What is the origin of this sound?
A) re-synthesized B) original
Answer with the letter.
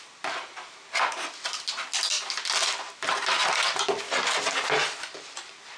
B